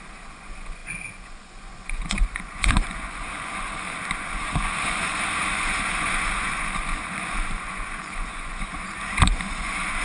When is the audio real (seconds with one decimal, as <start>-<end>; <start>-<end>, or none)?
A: none